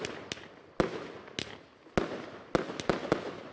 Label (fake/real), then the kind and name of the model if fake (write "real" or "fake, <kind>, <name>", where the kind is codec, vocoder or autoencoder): real